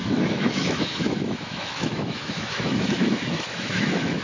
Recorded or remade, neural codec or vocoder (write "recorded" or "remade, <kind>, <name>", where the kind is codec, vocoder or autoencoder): remade, autoencoder, DAC-VAE